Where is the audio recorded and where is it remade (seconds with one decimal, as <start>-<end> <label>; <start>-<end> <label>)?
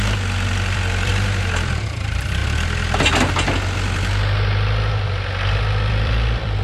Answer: 0.0-1.1 remade; 1.1-1.7 recorded; 1.7-2.4 remade; 2.4-5.9 recorded; 5.9-6.6 remade